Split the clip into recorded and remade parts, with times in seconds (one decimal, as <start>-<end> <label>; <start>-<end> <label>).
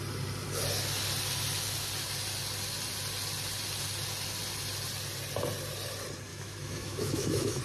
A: 0.0-6.3 recorded; 6.3-7.6 remade